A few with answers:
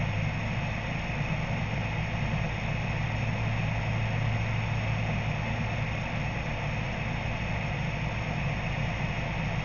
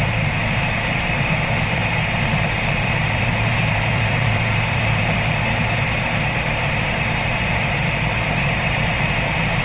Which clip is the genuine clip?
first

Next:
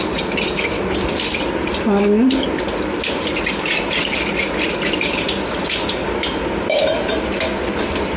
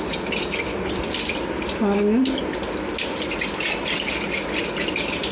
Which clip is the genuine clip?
second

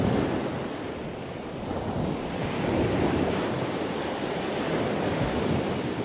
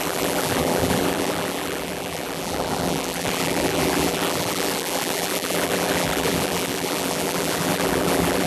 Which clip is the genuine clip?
first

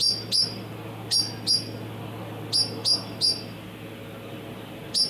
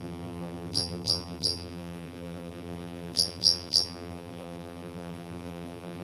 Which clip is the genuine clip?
first